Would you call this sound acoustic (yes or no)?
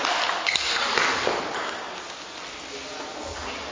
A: yes